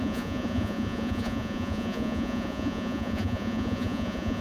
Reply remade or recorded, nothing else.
remade